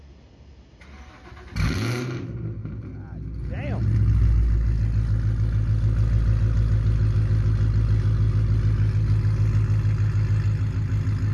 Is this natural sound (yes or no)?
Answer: yes